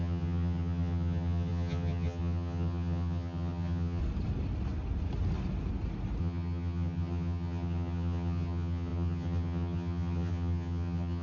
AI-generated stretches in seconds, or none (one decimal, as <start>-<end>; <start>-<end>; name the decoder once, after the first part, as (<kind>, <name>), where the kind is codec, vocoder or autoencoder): 0.0-4.0 (vocoder, HiFi-GAN); 6.2-11.2